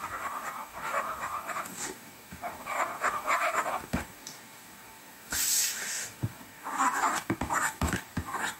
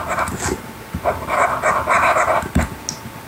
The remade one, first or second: first